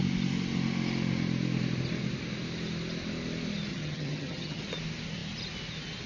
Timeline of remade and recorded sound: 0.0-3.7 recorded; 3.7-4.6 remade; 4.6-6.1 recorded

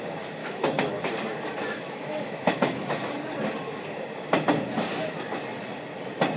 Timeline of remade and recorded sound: 0.0-0.4 recorded; 0.4-0.9 remade; 0.9-1.6 recorded; 1.6-2.9 remade; 2.9-6.4 recorded

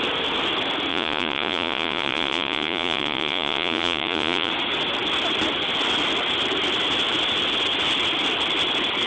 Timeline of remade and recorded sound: 0.0-0.9 recorded; 0.9-4.5 remade; 4.5-9.1 recorded

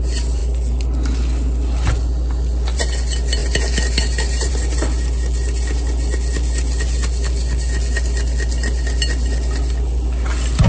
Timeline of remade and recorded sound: 0.0-10.7 recorded

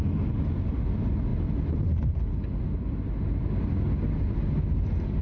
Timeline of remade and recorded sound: 0.0-5.2 recorded